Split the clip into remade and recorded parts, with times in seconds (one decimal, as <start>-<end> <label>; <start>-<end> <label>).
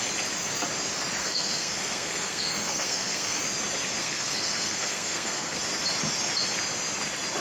0.0-1.2 recorded; 1.2-3.4 remade; 3.4-4.0 recorded; 4.0-5.6 remade; 5.6-7.4 recorded